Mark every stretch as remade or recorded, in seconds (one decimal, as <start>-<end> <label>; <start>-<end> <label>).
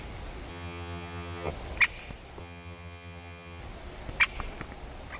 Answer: 0.0-0.5 recorded; 0.5-1.5 remade; 1.5-2.4 recorded; 2.4-3.6 remade; 3.6-5.2 recorded